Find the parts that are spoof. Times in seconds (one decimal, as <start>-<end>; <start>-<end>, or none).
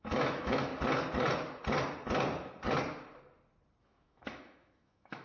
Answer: 0.0-0.7; 3.8-5.2